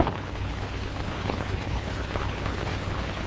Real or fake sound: fake